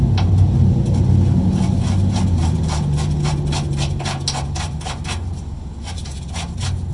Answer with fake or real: real